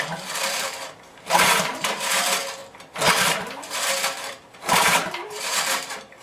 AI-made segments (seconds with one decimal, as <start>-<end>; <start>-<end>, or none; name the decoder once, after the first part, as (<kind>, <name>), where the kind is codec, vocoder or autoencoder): 0.0-2.6 (vocoder, BigVGAN v2); 3.2-6.2